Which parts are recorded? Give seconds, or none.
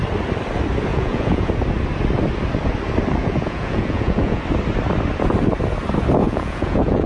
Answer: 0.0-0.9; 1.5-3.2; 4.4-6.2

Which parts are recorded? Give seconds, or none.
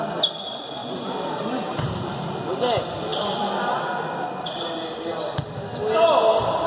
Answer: 0.0-6.7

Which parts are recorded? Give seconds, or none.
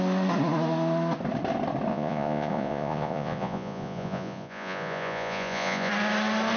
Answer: 0.0-1.9; 5.9-6.6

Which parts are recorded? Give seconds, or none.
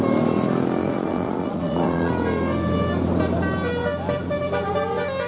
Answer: 0.0-0.8; 2.1-5.3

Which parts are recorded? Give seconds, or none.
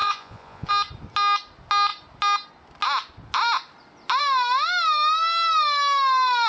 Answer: 0.7-6.5